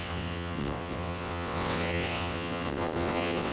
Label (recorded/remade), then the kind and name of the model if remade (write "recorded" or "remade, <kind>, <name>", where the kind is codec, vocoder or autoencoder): remade, vocoder, WaveNeXt